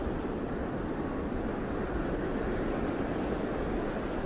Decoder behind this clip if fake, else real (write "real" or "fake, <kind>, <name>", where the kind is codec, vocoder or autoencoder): fake, vocoder, BigVGAN v2